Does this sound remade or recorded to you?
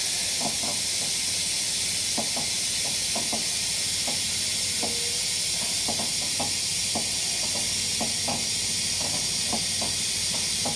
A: recorded